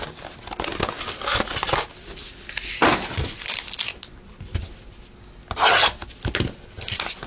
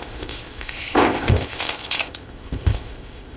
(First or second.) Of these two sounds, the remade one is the second